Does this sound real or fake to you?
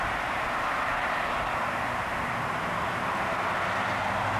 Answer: real